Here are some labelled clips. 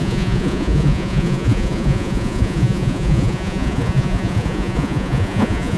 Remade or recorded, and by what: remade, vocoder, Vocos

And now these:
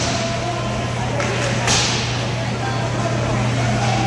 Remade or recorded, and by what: recorded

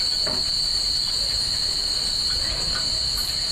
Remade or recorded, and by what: remade, vocoder, BigVGAN v2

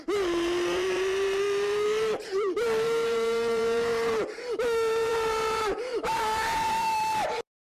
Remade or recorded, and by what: remade, vocoder, BigVGAN v2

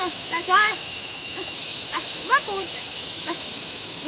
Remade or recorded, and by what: remade, autoencoder, DAC-VAE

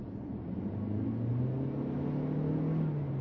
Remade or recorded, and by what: recorded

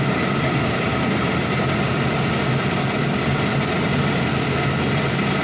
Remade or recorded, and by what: recorded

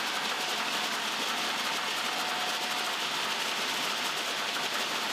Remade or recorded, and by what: recorded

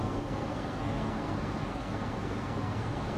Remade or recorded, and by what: remade, codec, SNAC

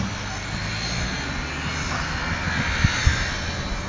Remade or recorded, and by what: recorded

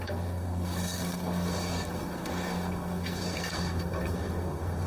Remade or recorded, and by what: remade, codec, SNAC